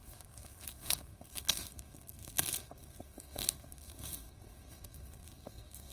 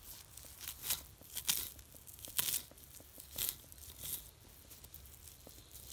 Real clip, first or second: second